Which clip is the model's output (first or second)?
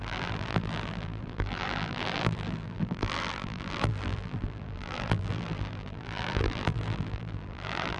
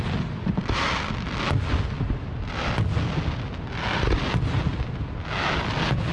first